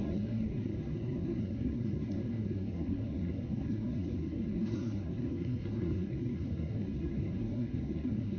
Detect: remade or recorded remade